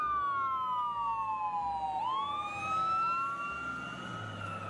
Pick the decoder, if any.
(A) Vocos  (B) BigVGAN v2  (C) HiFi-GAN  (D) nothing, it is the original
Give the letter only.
D